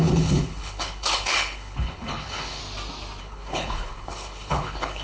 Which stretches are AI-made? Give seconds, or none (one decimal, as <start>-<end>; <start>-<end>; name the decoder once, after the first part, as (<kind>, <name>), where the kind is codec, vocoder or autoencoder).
0.0-2.6 (codec, HILCodec); 3.2-5.0